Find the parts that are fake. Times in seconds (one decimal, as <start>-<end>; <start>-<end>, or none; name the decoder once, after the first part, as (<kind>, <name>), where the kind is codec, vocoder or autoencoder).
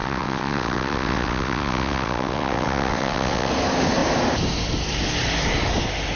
0.0-3.5 (vocoder, WaveNeXt)